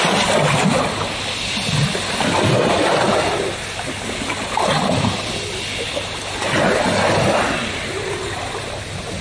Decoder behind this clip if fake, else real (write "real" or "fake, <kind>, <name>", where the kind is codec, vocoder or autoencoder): real